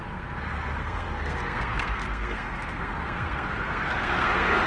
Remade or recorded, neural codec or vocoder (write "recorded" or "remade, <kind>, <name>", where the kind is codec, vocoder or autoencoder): remade, codec, SNAC